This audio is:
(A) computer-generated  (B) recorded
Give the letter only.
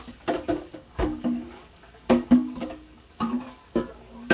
A